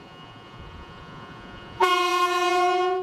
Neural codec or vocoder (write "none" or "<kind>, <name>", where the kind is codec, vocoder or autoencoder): vocoder, Vocos